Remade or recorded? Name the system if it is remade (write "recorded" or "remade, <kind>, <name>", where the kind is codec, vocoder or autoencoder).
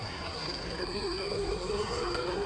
remade, codec, SNAC